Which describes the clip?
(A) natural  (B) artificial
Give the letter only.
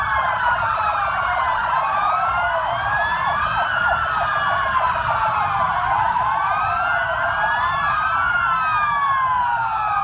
A